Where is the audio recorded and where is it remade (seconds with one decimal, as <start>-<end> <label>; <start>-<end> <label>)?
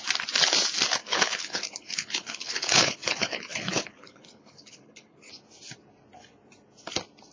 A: 0.0-1.0 recorded; 1.0-5.3 remade; 5.3-7.3 recorded